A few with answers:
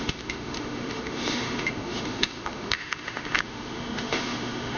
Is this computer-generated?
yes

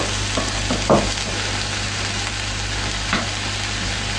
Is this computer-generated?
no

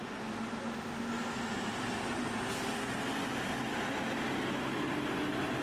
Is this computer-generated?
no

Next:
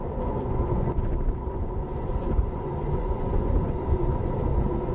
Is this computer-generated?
yes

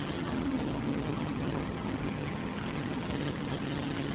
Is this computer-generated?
yes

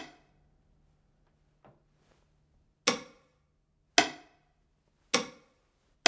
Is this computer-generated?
no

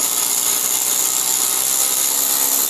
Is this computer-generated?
no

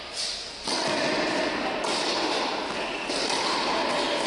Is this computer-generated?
no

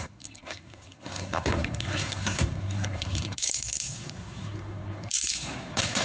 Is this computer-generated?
yes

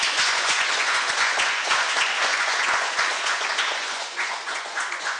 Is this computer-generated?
yes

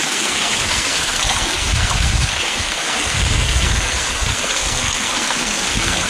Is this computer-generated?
yes